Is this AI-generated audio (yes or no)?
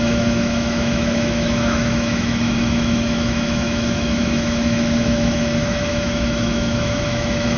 yes